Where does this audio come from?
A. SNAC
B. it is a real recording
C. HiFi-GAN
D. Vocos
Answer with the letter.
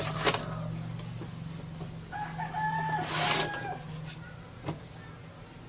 B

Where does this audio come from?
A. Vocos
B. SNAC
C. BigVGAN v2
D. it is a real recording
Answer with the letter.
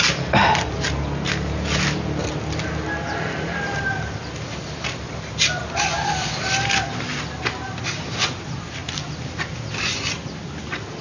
D